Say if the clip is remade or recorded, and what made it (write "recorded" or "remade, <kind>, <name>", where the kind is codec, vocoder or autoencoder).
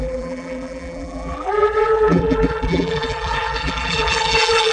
remade, vocoder, BigVGAN v2